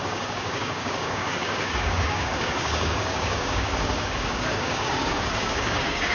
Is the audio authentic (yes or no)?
no